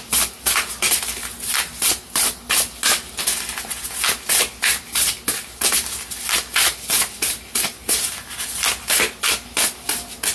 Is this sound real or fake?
real